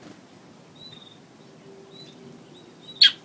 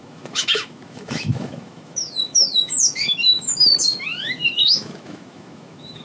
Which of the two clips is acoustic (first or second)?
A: first